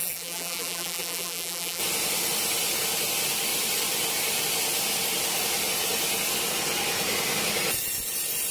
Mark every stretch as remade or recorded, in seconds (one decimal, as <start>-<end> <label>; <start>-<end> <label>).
0.0-1.8 remade; 1.8-8.5 recorded